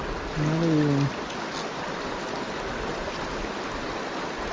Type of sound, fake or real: real